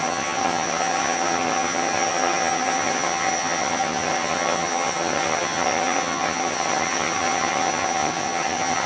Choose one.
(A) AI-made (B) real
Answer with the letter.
A